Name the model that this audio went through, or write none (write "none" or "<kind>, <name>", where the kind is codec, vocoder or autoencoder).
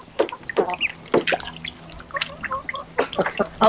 none